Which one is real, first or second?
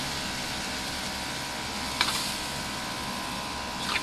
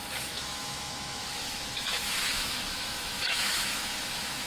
first